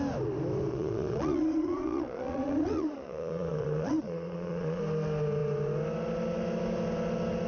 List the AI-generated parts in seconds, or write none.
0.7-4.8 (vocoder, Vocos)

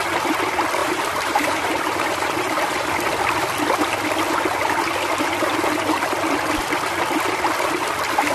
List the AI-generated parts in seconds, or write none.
0.8-2.9 (vocoder, BigVGAN v2)

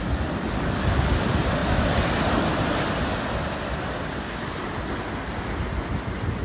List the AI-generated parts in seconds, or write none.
none

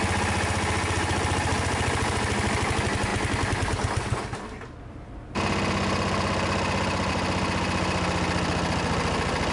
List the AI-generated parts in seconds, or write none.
none

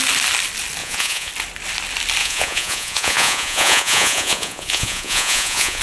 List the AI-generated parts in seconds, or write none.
0.8-1.3 (vocoder, Vocos); 2.2-5.8

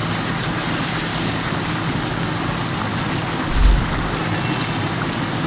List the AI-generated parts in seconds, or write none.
1.1-2.3 (codec, DAC); 2.9-4.1

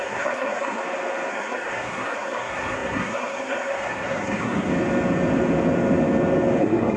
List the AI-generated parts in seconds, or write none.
0.0-0.8 (codec, SNAC); 1.3-4.7; 6.6-7.0